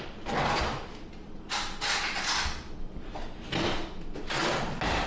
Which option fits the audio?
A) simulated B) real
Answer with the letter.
B